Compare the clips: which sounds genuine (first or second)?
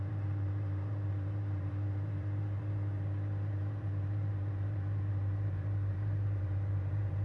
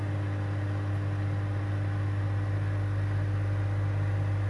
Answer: second